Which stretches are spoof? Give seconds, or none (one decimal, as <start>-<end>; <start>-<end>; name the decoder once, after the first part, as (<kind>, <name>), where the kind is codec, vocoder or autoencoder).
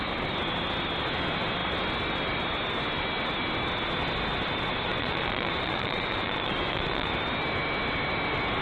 4.9-7.1 (vocoder, Vocos)